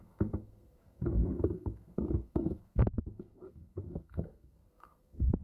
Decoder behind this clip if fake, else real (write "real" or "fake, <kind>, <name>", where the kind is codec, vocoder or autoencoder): fake, codec, SNAC